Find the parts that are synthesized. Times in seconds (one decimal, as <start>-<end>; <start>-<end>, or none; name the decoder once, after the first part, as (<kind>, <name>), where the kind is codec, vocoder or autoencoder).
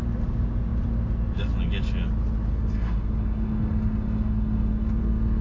2.5-5.4 (codec, SNAC)